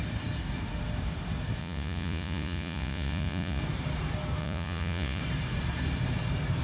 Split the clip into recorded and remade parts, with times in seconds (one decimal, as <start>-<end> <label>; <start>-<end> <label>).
0.0-1.6 recorded; 1.6-3.6 remade; 3.6-4.4 recorded; 4.4-5.2 remade; 5.2-6.6 recorded